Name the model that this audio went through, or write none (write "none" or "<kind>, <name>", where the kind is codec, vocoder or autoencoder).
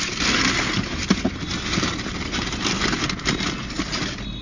none